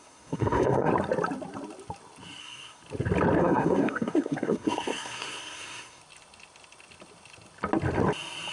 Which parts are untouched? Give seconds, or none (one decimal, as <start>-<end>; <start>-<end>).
0.9-2.4; 2.8-3.4; 6.0-8.5